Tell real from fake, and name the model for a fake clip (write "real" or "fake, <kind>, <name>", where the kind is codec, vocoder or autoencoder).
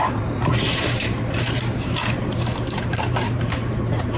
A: fake, vocoder, BigVGAN v2